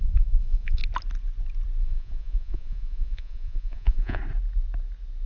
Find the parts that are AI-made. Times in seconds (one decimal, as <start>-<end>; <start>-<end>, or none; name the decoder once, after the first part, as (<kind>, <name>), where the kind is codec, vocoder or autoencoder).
0.0-0.8 (vocoder, Vocos); 1.8-4.2

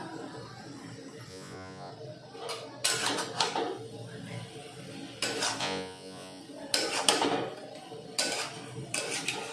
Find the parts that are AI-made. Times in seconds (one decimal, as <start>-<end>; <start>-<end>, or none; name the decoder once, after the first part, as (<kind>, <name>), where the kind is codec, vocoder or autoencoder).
1.3-1.9 (vocoder, Vocos); 5.6-6.4

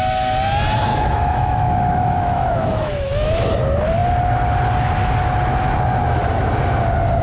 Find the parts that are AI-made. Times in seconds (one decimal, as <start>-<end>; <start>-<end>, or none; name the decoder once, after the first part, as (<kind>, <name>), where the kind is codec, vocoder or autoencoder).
0.9-3.1 (autoencoder, DAC-VAE)